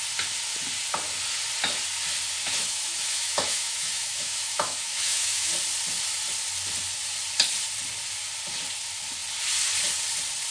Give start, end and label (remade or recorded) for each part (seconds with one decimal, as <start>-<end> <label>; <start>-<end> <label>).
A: 0.0-2.4 recorded; 2.4-5.5 remade; 5.5-10.5 recorded